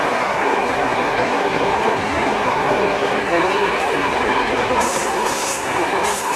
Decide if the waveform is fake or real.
fake